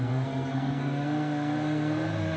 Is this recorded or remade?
remade